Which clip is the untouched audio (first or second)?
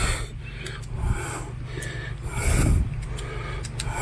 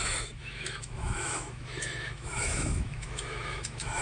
first